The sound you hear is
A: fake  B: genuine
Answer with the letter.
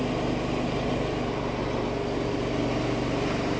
B